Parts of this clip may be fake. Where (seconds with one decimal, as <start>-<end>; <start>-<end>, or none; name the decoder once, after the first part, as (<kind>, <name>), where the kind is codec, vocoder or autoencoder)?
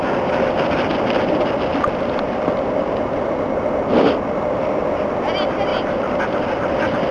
none